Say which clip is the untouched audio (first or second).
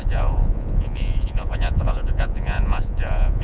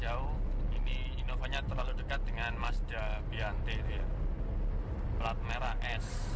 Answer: second